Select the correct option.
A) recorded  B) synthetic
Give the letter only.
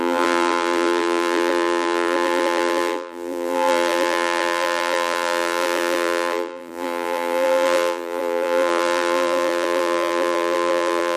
B